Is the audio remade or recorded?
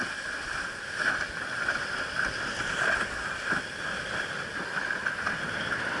recorded